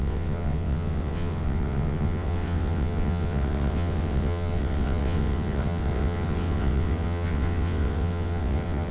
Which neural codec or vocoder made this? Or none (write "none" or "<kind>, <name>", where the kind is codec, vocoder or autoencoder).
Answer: vocoder, WaveNeXt